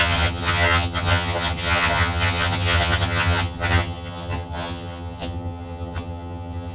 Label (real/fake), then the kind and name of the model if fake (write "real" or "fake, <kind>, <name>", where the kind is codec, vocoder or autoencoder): fake, vocoder, HiFi-GAN